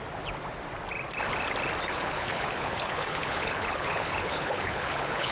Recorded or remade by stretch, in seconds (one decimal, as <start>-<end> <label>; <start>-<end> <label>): 0.0-1.9 recorded; 1.9-5.3 remade